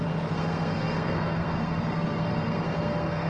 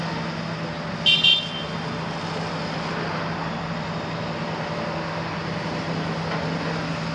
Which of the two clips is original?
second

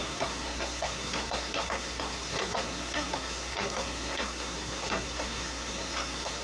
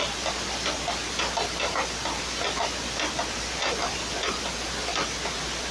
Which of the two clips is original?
second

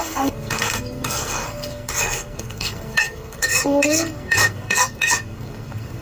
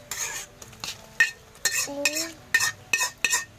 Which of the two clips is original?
second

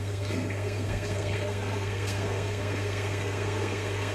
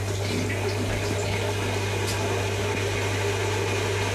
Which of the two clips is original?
second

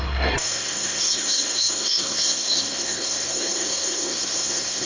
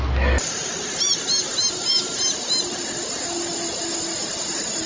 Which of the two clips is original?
second